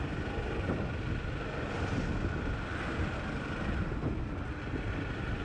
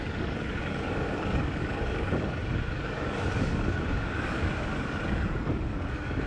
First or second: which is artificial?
second